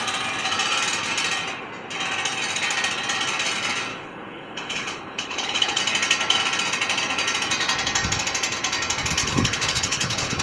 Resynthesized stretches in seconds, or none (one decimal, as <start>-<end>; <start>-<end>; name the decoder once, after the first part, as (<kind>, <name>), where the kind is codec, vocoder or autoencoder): 3.9-5.8 (codec, HILCodec); 9.2-10.4